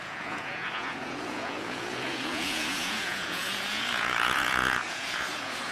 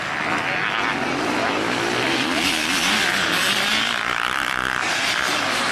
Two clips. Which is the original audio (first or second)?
second